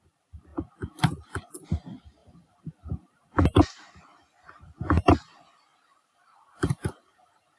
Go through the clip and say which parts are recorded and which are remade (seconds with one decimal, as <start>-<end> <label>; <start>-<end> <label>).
0.0-0.5 recorded; 0.5-1.4 remade; 1.4-2.2 recorded; 2.2-3.9 remade; 3.9-5.7 recorded; 5.7-7.6 remade